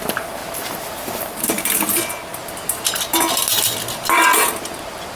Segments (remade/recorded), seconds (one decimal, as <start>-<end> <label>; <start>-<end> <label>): 0.0-5.2 recorded